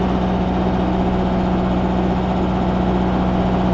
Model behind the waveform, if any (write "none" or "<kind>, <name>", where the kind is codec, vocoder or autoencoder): none